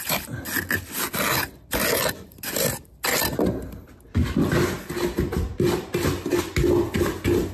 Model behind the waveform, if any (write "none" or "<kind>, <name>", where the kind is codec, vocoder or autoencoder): none